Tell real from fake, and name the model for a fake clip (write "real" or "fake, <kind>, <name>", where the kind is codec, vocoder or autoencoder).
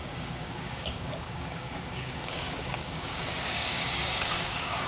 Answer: fake, codec, DAC